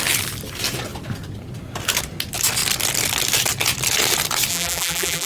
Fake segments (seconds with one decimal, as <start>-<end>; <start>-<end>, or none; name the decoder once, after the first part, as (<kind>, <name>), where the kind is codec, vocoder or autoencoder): 4.5-5.3 (vocoder, BigVGAN v2)